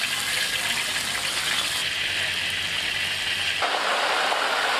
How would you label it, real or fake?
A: real